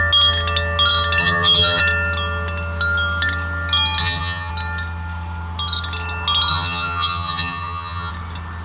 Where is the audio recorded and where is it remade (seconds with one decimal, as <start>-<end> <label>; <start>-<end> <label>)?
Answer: 0.0-1.2 recorded; 1.2-1.8 remade; 1.8-4.0 recorded; 4.0-4.5 remade; 4.5-6.5 recorded; 6.5-8.1 remade; 8.1-8.6 recorded